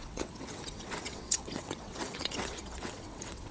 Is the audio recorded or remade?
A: remade